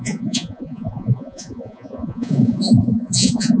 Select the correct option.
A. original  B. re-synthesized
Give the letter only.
B